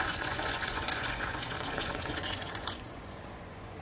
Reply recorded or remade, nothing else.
remade